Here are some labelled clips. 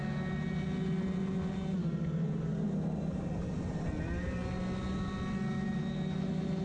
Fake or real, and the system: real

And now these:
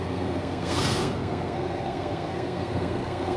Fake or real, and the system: fake, codec, SNAC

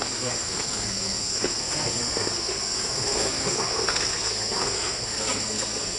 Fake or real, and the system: fake, codec, SNAC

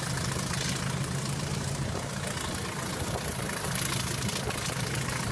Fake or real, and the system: real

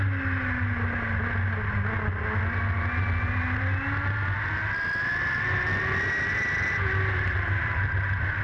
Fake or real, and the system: real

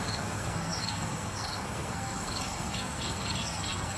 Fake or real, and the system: fake, codec, SNAC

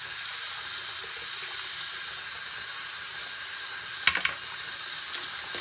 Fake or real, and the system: real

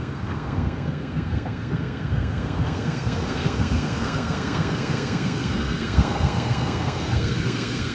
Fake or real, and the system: fake, codec, SNAC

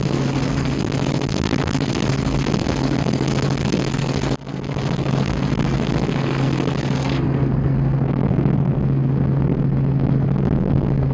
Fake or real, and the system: fake, codec, SNAC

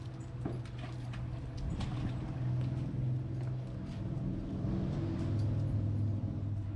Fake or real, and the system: real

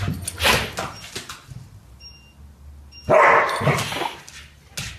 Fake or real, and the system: real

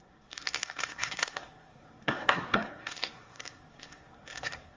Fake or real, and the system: fake, codec, SNAC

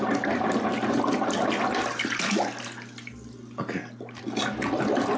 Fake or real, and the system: real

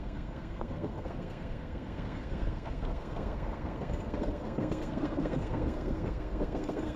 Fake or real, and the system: fake, codec, SNAC